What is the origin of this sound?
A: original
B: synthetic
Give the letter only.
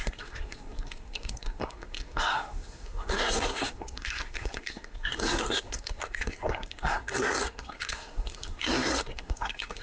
B